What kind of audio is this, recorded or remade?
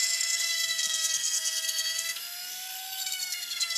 remade